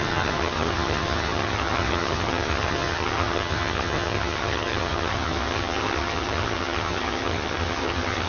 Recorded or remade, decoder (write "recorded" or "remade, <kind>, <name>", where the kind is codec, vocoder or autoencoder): remade, vocoder, HiFi-GAN